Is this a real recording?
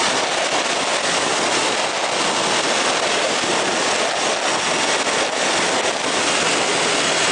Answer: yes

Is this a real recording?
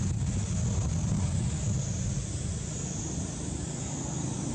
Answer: yes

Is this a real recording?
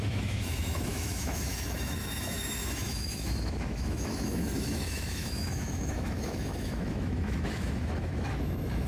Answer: no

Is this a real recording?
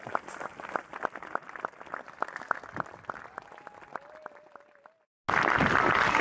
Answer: yes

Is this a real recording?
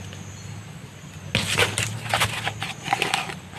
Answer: yes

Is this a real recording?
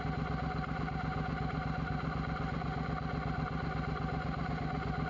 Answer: yes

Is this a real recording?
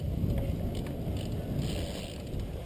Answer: yes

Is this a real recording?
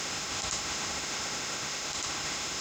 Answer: no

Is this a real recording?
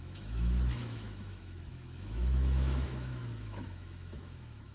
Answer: no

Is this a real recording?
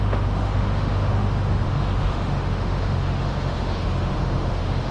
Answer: no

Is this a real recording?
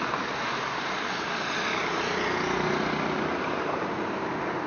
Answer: yes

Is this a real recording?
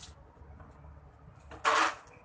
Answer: yes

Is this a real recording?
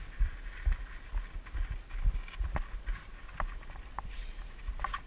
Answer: yes